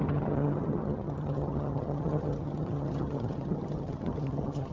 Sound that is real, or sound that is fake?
fake